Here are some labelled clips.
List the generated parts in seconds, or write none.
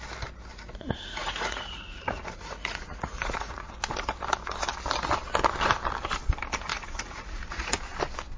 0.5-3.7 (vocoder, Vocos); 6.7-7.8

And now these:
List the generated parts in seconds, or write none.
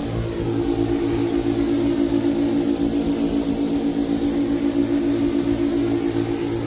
none